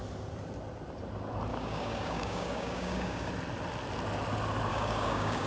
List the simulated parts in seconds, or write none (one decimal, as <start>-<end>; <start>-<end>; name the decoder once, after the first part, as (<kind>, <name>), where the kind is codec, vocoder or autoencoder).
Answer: 1.5-3.3 (codec, DAC); 4.7-5.5